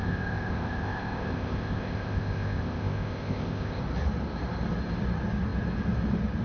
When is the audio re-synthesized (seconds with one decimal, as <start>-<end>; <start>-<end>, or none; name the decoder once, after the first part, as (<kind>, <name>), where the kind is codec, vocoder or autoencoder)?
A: 0.0-3.8 (codec, ZipCodec)